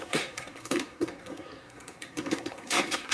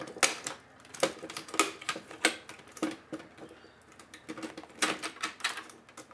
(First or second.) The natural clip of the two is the second